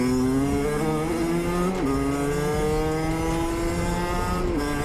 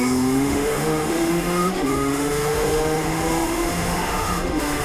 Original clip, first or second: first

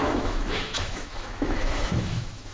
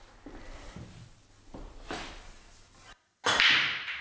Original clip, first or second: second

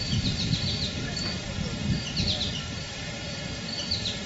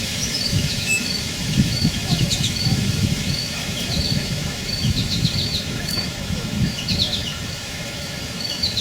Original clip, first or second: first